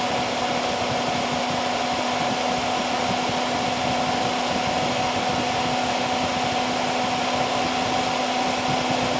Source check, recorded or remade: recorded